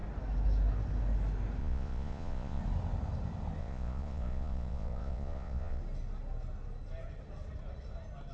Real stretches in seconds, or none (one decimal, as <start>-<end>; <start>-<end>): 0.0-1.6; 2.6-3.6; 5.8-8.3